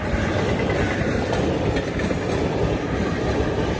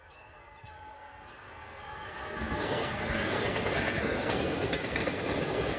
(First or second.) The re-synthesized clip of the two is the second